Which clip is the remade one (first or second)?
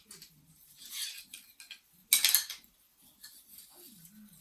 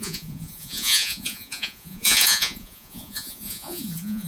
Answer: second